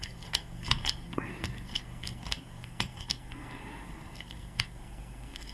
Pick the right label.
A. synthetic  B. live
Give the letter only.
A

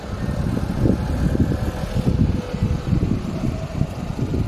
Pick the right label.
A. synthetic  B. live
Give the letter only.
B